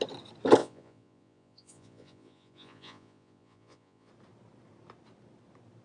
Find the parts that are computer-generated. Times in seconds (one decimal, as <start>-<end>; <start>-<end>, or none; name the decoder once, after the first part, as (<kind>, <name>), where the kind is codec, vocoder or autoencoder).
0.6-4.1 (vocoder, Vocos)